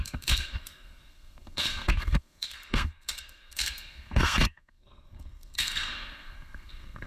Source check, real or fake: fake